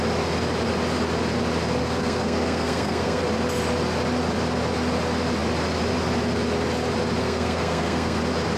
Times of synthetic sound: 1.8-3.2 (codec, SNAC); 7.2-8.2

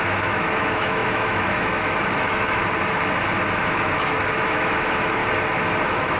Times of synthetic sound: 0.0-2.6 (autoencoder, DAC-VAE); 3.6-5.2; 5.8-6.2

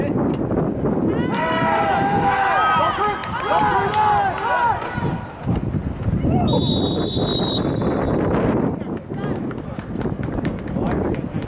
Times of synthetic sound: none

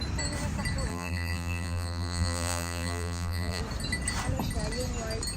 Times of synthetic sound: 0.9-3.6 (vocoder, BigVGAN v2)

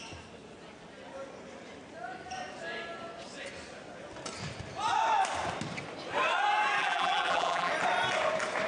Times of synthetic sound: 6.8-7.7 (vocoder, BigVGAN v2)

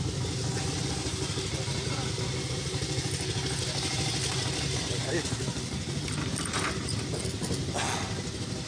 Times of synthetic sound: none

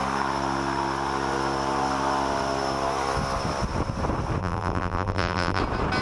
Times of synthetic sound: 4.4-5.6 (vocoder, BigVGAN v2)

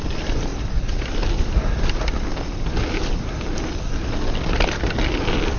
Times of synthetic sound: none